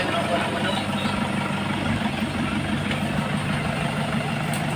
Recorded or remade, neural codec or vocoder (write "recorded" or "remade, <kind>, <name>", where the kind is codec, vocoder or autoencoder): recorded